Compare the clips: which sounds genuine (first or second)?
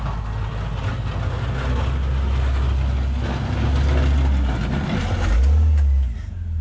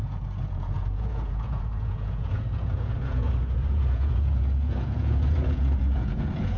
first